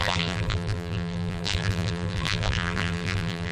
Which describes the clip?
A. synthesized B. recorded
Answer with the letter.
A